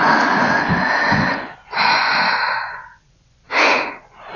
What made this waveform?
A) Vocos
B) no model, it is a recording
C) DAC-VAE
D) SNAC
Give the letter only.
A